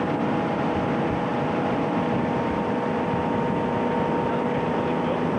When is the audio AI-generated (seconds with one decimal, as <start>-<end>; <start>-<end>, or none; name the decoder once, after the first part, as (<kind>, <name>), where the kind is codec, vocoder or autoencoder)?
none